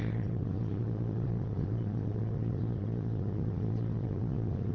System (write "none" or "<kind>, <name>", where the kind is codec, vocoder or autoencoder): vocoder, Vocos